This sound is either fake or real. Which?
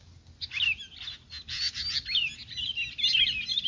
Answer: real